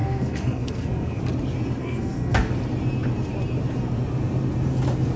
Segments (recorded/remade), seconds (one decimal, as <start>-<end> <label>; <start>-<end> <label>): 0.0-1.2 remade; 1.2-1.8 recorded; 1.8-2.5 remade; 2.5-5.2 recorded

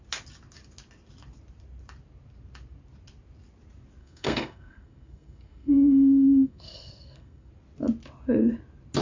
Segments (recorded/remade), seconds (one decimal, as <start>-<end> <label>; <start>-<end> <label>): 0.0-4.0 recorded; 4.0-7.5 remade; 7.5-9.0 recorded